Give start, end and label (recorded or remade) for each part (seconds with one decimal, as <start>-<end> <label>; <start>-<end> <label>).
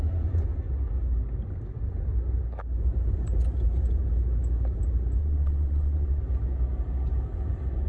0.0-5.2 recorded; 5.2-6.2 remade; 6.2-7.9 recorded